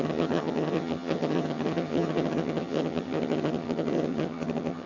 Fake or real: fake